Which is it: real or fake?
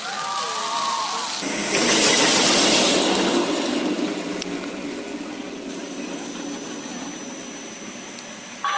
real